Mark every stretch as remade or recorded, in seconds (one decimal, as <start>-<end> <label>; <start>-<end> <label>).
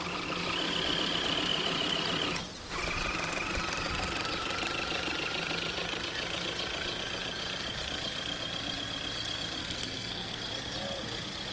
0.0-9.6 recorded; 9.6-10.4 remade; 10.4-11.5 recorded